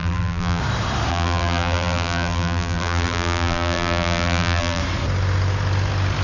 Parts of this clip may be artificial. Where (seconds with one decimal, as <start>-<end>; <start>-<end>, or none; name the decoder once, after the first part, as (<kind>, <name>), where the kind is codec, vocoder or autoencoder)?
0.0-0.6 (vocoder, BigVGAN v2); 1.1-4.8

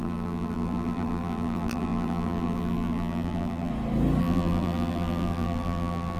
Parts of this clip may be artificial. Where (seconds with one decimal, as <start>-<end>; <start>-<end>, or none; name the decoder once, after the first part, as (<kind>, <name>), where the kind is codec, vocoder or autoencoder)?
0.0-3.7 (vocoder, BigVGAN v2); 4.2-6.2

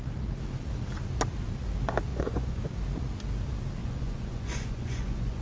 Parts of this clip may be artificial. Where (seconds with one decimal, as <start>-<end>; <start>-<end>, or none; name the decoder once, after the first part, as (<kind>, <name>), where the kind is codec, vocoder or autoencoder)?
2.1-2.6 (vocoder, Vocos); 3.8-5.4

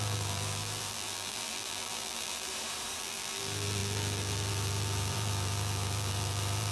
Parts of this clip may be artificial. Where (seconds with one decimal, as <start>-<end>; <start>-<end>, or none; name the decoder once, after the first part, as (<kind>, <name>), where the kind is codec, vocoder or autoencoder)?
0.0-2.5 (vocoder, BigVGAN v2); 3.0-6.7

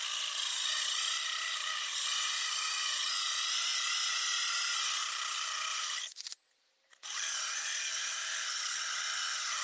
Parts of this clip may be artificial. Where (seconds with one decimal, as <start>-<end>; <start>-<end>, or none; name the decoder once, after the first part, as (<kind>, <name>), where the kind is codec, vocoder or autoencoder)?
none

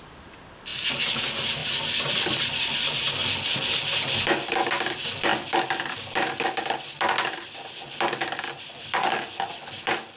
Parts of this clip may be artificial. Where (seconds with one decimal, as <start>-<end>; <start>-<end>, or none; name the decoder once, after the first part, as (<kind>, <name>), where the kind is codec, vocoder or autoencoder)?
1.6-2.6 (vocoder, BigVGAN v2)

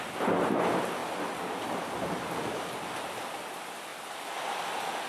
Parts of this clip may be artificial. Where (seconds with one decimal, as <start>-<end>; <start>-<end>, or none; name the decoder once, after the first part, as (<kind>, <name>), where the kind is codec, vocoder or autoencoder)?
none

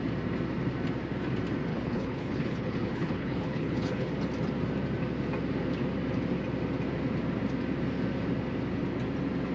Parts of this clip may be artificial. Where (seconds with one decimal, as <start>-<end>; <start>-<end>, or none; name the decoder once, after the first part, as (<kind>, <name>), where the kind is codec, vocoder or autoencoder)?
1.7-4.1 (codec, HILCodec)